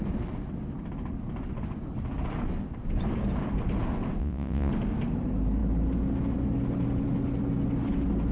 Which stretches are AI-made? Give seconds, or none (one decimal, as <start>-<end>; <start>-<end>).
4.2-4.7